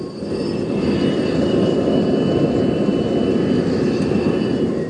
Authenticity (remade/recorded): recorded